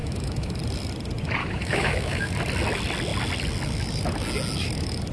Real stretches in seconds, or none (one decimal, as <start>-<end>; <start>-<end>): 0.6-1.4; 2.3-4.6